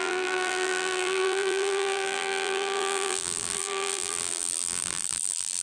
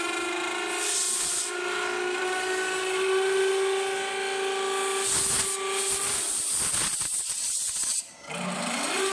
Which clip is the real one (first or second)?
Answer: second